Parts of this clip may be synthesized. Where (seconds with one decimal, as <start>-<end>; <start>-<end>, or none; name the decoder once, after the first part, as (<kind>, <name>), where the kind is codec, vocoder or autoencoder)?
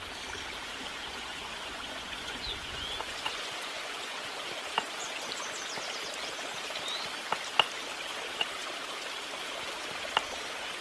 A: 0.9-5.3 (vocoder, Vocos)